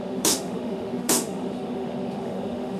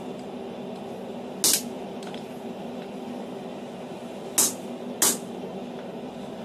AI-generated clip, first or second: first